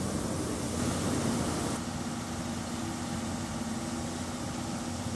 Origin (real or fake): real